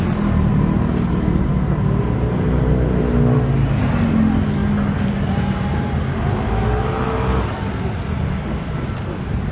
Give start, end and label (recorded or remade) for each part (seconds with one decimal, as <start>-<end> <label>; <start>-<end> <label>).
0.0-9.5 recorded